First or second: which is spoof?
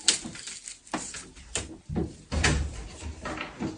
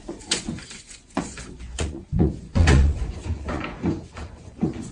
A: second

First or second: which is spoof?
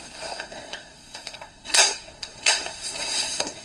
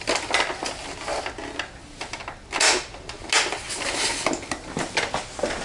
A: first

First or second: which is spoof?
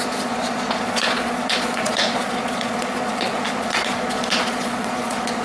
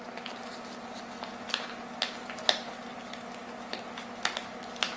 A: first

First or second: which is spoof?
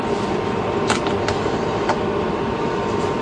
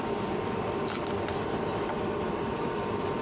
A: second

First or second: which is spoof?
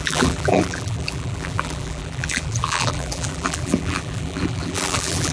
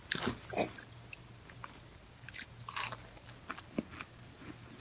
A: first